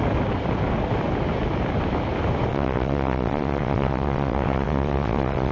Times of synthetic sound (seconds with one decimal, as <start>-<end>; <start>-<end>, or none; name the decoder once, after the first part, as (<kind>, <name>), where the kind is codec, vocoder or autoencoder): 2.5-5.5 (vocoder, WaveNeXt)